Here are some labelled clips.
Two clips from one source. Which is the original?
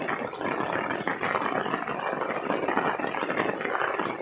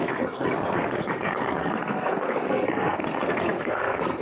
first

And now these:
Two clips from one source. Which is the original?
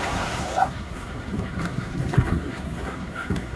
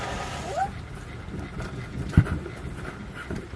second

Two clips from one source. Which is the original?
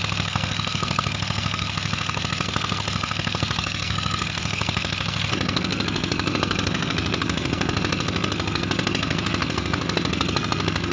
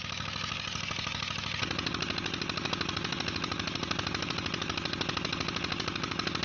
second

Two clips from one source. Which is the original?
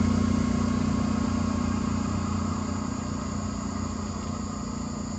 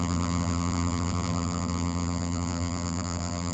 first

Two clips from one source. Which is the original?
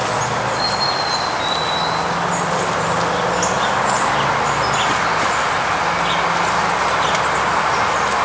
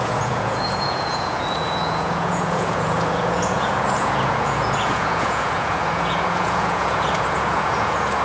first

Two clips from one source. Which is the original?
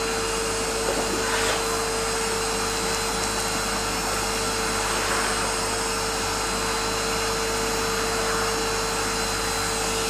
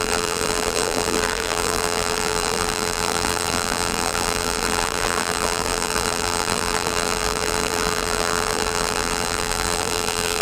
first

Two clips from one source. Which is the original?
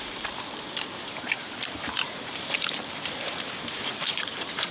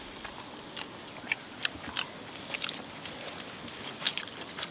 second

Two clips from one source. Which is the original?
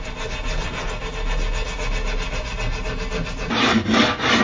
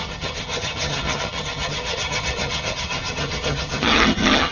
first